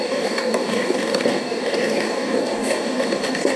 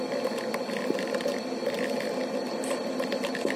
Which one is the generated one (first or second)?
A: first